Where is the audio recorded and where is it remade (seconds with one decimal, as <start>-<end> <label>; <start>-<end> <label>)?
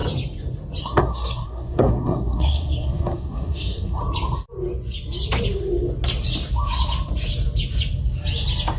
0.0-0.8 recorded; 0.8-4.0 remade; 4.0-8.8 recorded